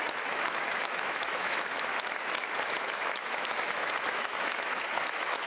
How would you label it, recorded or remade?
remade